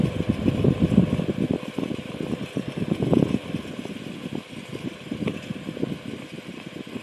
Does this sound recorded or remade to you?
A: recorded